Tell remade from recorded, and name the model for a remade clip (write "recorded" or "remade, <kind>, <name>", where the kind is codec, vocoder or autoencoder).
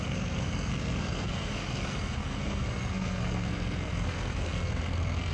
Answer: remade, codec, SNAC